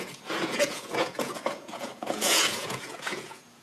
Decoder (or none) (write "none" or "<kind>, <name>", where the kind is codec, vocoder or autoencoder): vocoder, Vocos